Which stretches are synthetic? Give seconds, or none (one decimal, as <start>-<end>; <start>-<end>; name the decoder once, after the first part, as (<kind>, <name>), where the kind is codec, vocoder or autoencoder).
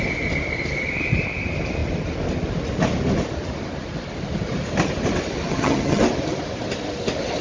5.5-6.0 (vocoder, HiFi-GAN)